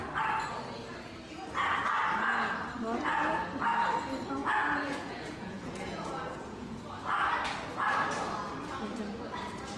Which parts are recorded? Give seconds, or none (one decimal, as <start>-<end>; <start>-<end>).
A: 0.0-4.4; 6.8-9.8